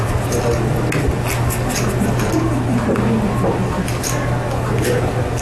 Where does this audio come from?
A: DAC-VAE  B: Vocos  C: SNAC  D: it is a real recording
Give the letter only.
D